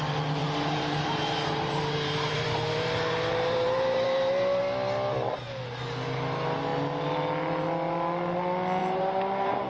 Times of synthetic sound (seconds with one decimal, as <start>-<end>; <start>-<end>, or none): 0.4-4.6; 8.8-9.7